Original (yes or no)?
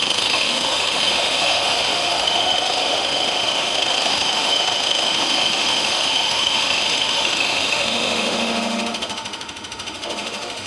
no